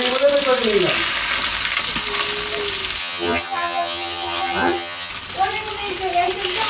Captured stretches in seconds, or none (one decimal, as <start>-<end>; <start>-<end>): 0.0-3.0; 5.1-6.7